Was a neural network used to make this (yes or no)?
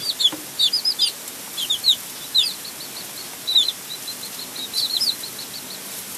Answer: no